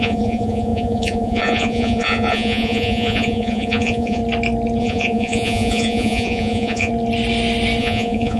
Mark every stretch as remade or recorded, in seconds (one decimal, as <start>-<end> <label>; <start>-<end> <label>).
0.0-4.2 remade; 4.2-4.8 recorded; 4.8-6.9 remade; 6.9-7.8 recorded; 7.8-8.4 remade

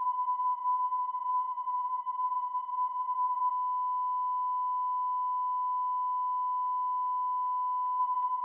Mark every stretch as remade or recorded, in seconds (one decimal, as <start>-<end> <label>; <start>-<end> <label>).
0.0-3.5 remade; 3.5-8.0 recorded; 8.0-8.4 remade

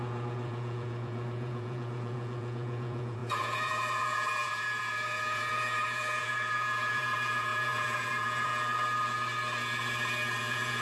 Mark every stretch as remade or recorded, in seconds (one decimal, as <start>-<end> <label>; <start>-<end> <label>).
0.0-8.5 remade; 8.5-10.4 recorded; 10.4-10.8 remade

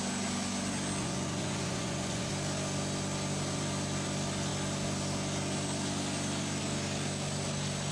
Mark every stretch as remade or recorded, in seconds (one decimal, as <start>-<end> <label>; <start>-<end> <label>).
0.0-1.0 recorded; 1.0-2.3 remade; 2.3-7.9 recorded